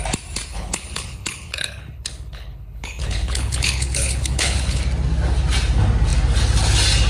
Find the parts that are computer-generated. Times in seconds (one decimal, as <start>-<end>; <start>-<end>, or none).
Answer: 0.5-4.8